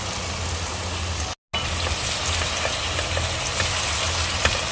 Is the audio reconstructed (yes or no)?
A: no